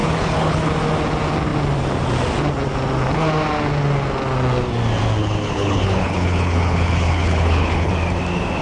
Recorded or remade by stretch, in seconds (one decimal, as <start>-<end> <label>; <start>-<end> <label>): 0.0-0.7 remade; 0.7-5.2 recorded; 5.2-7.9 remade; 7.9-8.6 recorded